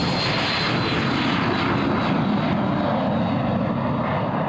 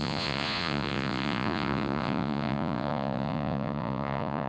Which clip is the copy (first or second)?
second